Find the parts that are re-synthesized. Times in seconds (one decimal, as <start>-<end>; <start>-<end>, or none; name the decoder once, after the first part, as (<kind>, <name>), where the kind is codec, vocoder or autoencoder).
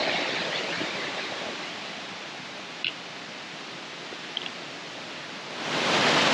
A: none